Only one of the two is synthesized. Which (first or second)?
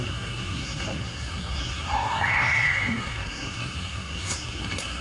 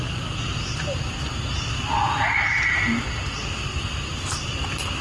first